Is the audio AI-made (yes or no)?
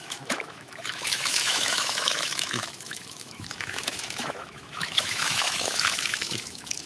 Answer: yes